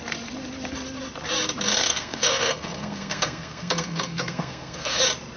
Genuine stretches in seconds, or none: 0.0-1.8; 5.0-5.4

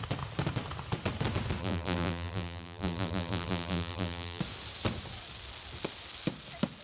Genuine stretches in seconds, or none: 0.0-1.6; 4.4-6.8

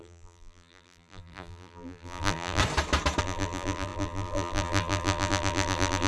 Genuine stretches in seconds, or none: 2.6-3.2

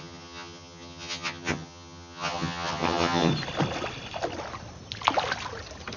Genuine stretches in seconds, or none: 3.3-6.0

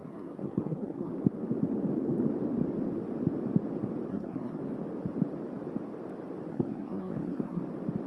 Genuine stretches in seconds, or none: 1.1-4.1; 4.6-6.5; 7.6-8.1

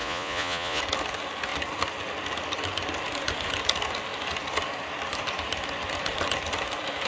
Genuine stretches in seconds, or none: 0.8-7.1

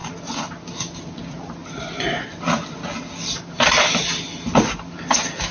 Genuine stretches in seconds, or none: 0.0-5.5

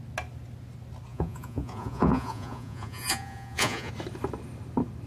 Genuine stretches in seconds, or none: 0.0-1.1; 3.9-5.1